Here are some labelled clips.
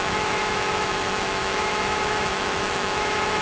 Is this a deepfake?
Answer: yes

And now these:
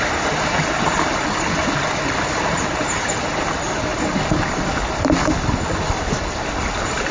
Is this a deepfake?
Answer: no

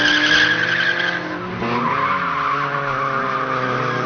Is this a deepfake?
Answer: no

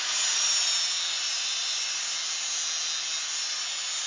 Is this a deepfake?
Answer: no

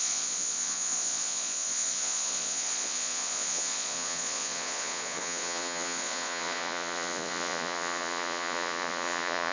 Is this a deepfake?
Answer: yes